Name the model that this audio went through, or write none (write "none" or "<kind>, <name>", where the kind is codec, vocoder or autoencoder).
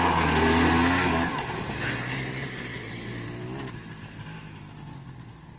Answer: none